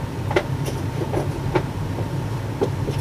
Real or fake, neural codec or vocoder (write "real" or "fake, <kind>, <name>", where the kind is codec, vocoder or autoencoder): real